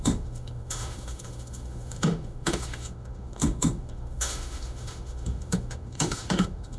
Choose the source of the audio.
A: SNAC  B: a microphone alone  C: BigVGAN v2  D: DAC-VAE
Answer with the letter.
D